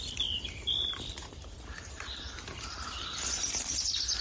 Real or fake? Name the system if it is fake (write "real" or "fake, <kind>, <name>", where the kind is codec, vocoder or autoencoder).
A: fake, vocoder, BigVGAN v2